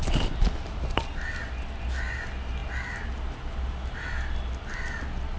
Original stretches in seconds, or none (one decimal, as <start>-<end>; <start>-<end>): 0.0-5.4

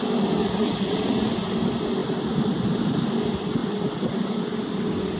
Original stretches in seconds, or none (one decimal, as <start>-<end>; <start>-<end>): 0.0-0.4; 1.3-5.2

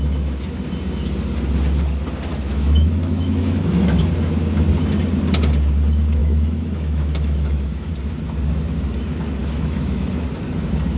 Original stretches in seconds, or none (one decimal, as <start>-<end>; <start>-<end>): 0.0-2.3; 4.0-6.2; 7.9-9.4; 10.1-11.0

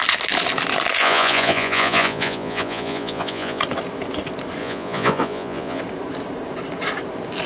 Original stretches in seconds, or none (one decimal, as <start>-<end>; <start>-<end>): 0.0-1.0; 3.6-4.6; 5.8-7.5

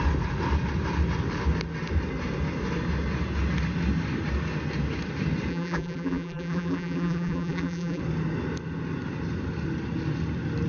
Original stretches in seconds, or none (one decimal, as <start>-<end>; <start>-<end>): 0.0-5.5; 8.0-10.7

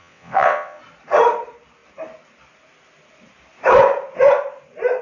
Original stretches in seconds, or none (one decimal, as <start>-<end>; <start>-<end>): 0.8-5.0